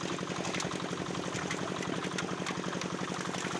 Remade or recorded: recorded